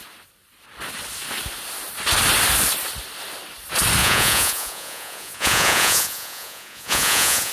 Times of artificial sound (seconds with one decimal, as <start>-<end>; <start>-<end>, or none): 4.0-7.5